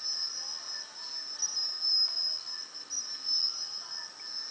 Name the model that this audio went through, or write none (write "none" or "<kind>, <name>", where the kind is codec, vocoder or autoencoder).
none